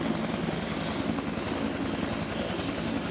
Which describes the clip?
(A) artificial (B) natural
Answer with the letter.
B